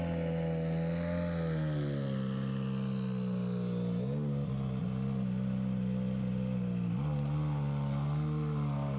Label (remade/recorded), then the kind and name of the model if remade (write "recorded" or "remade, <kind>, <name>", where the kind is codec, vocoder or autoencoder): recorded